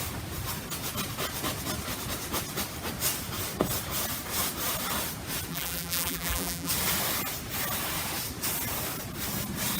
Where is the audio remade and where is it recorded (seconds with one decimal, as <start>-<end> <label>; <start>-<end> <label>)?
0.0-5.5 recorded; 5.5-6.7 remade; 6.7-9.8 recorded